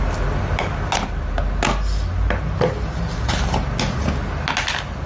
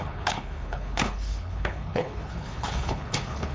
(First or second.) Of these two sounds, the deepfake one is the second